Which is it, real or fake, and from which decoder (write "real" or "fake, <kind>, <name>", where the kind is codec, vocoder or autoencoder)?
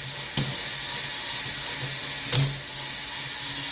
real